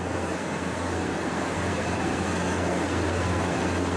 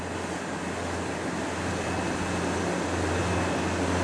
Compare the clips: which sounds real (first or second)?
second